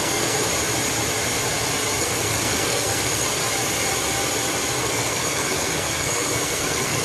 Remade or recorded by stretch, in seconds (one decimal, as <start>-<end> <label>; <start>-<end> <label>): 0.0-0.5 remade; 0.5-2.0 recorded; 2.0-3.4 remade; 3.4-4.8 recorded; 4.8-7.0 remade